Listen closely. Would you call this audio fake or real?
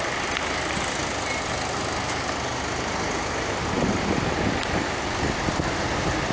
real